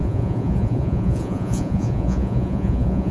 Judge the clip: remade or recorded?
remade